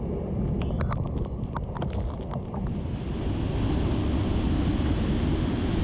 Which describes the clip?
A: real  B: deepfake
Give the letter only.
A